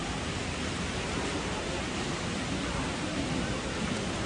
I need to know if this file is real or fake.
fake